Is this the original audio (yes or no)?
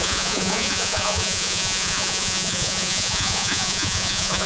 no